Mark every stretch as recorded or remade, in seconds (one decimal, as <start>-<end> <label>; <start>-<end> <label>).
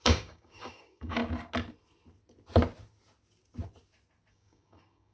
0.0-1.2 remade; 1.2-4.3 recorded; 4.3-5.1 remade